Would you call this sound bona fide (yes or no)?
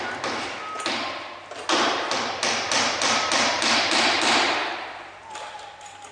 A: yes